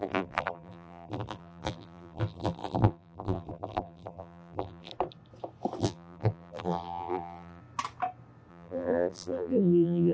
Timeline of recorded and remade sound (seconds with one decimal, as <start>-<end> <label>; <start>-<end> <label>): 0.0-4.9 remade; 4.9-5.8 recorded; 5.8-7.6 remade; 7.6-8.5 recorded; 8.5-10.1 remade